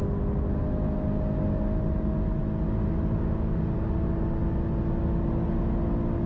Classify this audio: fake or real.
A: real